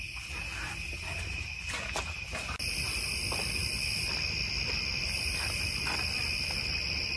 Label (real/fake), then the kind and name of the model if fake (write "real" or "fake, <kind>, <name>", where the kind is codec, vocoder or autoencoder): real